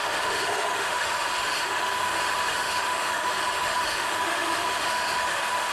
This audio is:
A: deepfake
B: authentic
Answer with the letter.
A